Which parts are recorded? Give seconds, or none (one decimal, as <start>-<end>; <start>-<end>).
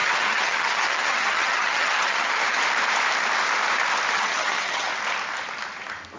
2.6-4.1; 4.9-6.2